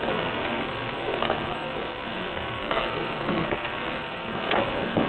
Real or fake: fake